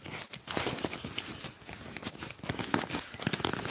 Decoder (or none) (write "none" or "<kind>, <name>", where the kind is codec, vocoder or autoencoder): none